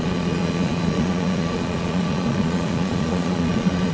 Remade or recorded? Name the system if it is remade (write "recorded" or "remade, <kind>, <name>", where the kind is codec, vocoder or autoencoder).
remade, vocoder, Vocos